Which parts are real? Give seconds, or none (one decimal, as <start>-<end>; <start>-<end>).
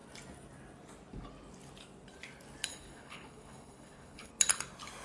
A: 0.0-2.7; 4.3-5.0